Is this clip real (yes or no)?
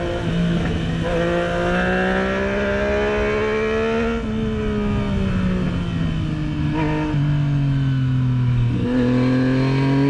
yes